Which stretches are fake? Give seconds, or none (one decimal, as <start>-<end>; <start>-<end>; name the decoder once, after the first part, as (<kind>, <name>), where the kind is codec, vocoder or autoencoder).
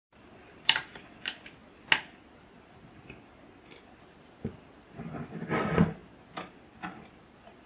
0.0-1.6 (vocoder, BigVGAN v2); 4.0-6.0; 7.1-7.7